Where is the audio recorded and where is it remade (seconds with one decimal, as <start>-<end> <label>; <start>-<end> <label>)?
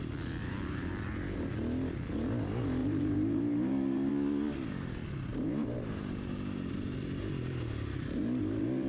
0.0-0.4 recorded; 0.4-1.5 remade; 1.5-2.8 recorded; 2.8-4.1 remade; 4.1-5.3 recorded; 5.3-8.9 remade